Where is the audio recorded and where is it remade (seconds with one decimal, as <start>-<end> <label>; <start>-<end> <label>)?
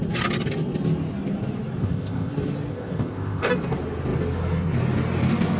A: 0.0-1.8 recorded; 1.8-2.3 remade; 2.3-2.7 recorded; 2.7-3.5 remade; 3.5-5.6 recorded